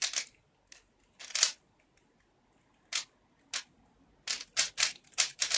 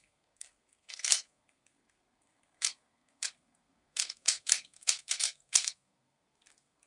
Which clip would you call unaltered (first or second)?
first